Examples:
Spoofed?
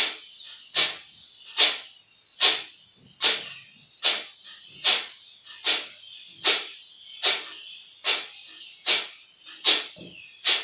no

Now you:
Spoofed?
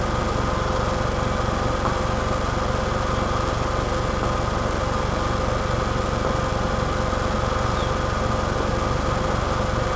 no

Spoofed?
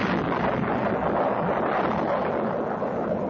no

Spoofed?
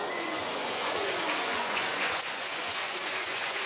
yes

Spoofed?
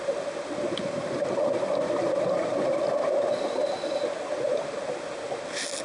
no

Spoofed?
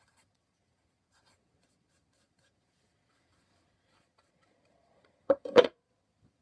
yes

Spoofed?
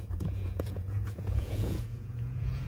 yes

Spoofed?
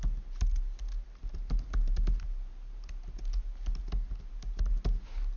no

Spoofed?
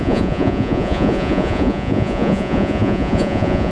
yes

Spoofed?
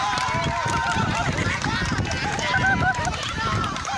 no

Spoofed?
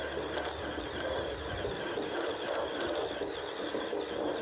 no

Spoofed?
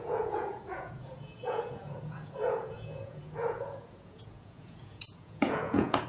yes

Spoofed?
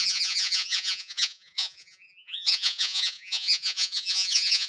yes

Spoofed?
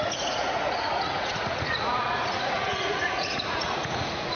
yes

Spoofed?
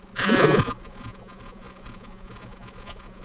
yes